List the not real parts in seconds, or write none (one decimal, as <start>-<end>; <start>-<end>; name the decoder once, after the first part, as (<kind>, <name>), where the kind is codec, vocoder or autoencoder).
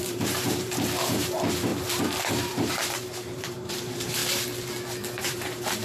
0.0-4.2 (vocoder, BigVGAN v2); 5.2-5.8